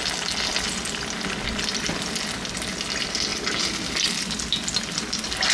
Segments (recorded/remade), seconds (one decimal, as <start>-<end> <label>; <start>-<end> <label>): 0.0-5.5 recorded